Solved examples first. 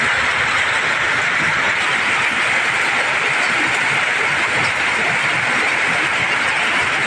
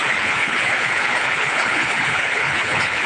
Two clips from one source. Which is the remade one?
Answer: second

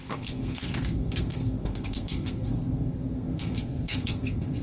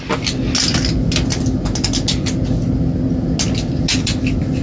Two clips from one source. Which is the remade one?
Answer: first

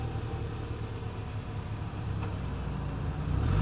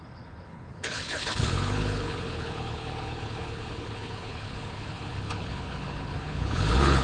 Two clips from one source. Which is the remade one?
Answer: second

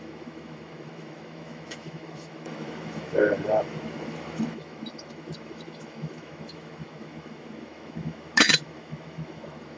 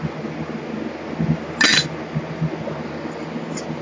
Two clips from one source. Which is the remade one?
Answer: first